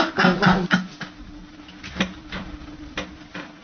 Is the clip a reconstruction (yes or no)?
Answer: no